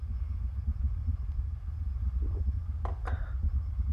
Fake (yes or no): no